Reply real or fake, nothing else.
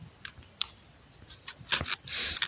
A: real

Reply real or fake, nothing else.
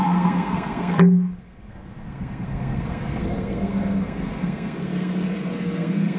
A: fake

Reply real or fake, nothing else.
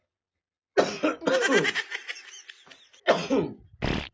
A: real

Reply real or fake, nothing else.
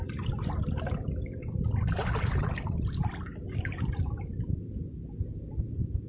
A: real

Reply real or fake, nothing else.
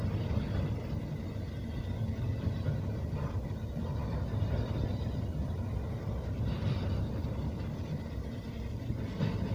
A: real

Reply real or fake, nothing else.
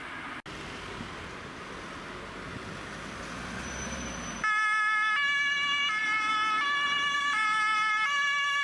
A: real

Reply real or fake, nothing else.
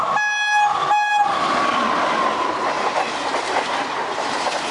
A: real